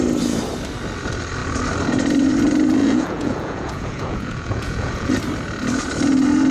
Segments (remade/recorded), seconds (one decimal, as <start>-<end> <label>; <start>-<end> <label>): 0.0-2.8 recorded; 2.8-5.1 remade; 5.1-6.5 recorded